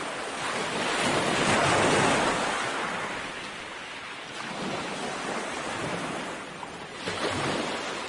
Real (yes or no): yes